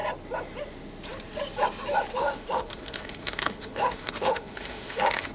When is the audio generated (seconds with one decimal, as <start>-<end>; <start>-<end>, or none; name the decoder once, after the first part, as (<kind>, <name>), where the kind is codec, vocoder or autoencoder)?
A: 2.1-5.3 (autoencoder, DAC-VAE)